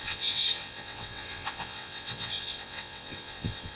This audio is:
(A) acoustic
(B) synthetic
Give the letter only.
B